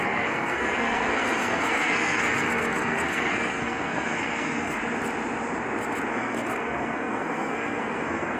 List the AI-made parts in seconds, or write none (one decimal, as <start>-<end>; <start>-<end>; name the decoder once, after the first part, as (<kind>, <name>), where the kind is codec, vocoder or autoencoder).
0.0-4.8 (codec, SNAC); 6.1-8.4

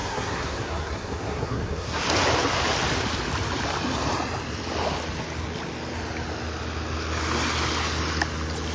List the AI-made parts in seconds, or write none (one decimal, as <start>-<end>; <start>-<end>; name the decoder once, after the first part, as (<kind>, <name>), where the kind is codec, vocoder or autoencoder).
0.0-2.0 (codec, SNAC)

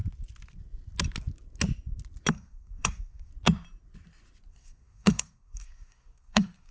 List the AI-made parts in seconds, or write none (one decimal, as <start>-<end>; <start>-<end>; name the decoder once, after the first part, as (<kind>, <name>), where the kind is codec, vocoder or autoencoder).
2.3-3.3 (codec, SNAC); 4.5-6.7

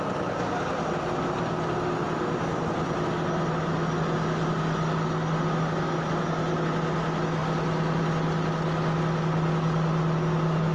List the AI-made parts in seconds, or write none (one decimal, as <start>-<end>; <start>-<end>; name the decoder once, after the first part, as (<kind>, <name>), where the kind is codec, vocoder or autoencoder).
none

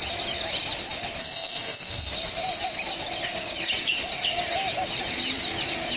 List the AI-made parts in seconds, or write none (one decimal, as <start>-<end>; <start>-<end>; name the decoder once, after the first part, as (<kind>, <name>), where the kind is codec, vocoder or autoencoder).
1.2-2.1 (codec, SNAC)

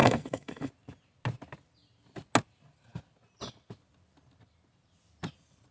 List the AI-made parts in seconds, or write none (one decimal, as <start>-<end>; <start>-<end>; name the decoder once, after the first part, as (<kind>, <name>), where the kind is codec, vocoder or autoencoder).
0.0-0.7 (codec, SNAC)

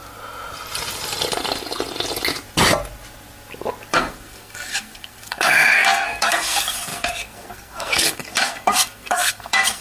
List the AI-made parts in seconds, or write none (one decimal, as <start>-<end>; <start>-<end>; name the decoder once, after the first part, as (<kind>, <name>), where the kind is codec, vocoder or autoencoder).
3.9-9.8 (codec, SNAC)

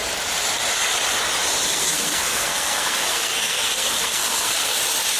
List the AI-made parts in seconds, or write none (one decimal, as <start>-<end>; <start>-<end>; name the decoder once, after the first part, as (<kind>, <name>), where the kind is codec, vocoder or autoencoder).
1.7-4.8 (codec, SNAC)